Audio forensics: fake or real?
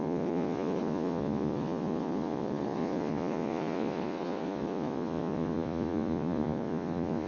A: fake